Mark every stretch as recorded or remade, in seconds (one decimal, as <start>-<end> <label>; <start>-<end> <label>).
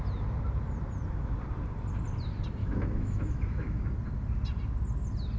0.0-2.6 recorded; 2.6-3.8 remade; 3.8-5.4 recorded